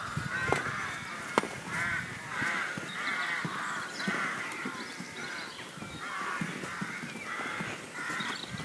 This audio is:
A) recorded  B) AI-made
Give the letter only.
A